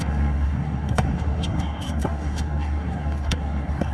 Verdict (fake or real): fake